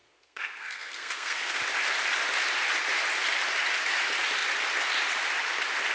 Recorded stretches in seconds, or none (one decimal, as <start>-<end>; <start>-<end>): 1.6-5.9